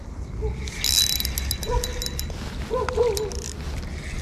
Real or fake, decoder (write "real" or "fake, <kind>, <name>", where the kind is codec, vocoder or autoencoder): real